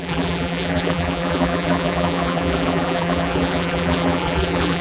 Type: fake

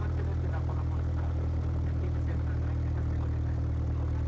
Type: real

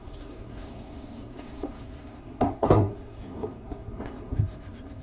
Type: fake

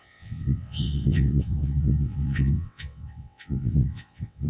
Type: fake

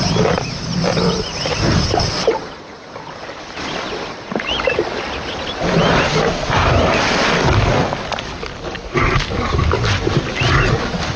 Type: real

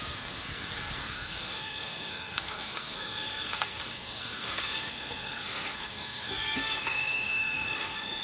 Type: fake